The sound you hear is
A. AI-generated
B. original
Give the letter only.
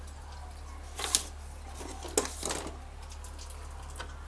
B